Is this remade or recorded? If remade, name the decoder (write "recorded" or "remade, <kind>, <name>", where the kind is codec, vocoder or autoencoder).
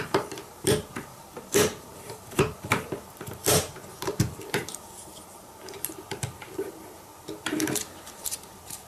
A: remade, vocoder, BigVGAN v2